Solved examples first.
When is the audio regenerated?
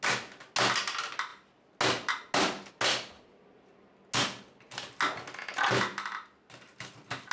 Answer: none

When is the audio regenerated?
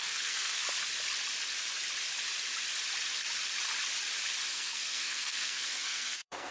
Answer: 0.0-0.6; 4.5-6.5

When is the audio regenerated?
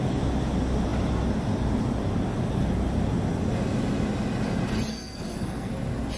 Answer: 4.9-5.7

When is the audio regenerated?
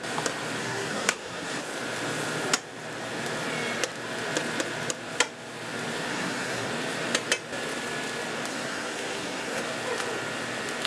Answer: 0.6-1.6; 6.1-6.7; 8.5-9.6